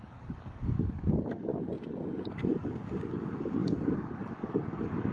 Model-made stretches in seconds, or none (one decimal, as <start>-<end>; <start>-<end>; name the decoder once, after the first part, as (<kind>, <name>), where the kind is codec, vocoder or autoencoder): 0.0-1.5 (codec, DAC); 2.3-5.1